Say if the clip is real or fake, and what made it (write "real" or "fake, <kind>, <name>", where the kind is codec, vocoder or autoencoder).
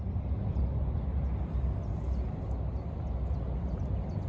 real